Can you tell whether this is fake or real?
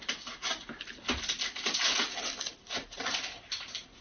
real